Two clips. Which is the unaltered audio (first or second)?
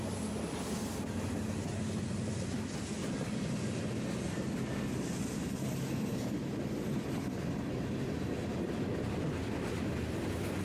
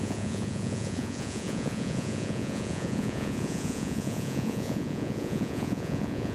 first